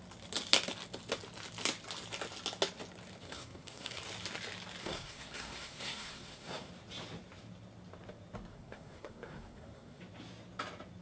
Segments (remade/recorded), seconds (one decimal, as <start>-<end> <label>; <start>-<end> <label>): 0.0-3.2 recorded; 3.2-4.0 remade; 4.0-4.8 recorded; 4.8-6.7 remade; 6.7-8.5 recorded; 8.5-10.0 remade; 10.0-11.0 recorded